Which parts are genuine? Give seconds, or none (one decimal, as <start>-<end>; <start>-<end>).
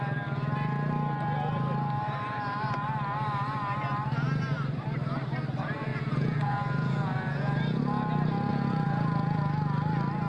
0.0-5.9; 7.8-8.5; 9.4-10.3